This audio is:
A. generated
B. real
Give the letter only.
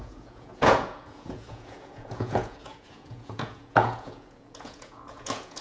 A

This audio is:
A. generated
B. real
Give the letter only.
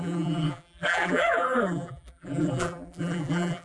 A